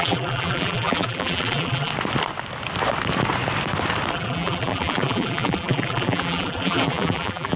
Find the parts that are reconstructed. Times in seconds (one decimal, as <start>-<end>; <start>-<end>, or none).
0.0-1.9; 4.1-7.6